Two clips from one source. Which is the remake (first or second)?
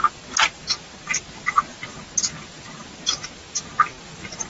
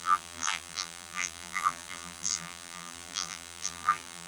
second